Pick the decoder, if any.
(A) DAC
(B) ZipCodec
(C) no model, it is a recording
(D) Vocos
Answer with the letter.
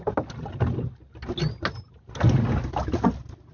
C